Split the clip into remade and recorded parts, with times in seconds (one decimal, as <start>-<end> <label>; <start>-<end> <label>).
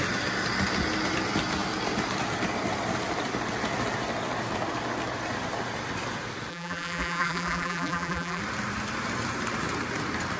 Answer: 0.0-6.5 recorded; 6.5-8.4 remade; 8.4-10.4 recorded